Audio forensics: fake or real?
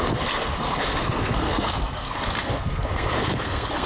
fake